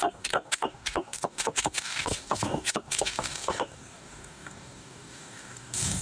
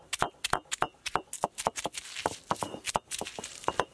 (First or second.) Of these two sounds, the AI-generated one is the first